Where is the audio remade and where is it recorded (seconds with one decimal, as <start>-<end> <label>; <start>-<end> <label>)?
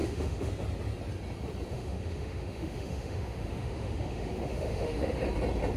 0.0-0.5 remade; 0.5-1.7 recorded; 1.7-5.2 remade; 5.2-5.8 recorded